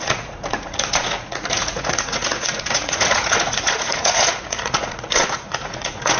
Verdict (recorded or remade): remade